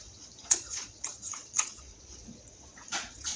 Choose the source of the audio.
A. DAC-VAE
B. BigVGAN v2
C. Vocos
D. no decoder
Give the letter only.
C